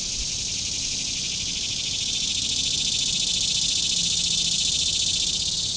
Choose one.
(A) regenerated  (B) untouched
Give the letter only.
B